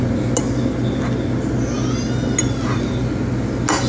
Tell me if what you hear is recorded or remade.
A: recorded